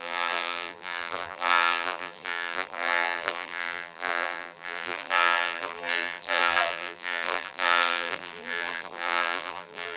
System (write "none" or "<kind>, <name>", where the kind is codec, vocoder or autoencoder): vocoder, BigVGAN v2